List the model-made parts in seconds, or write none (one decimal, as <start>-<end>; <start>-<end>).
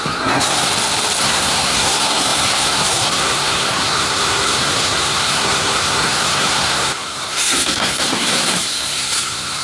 0.0-0.7; 1.2-9.6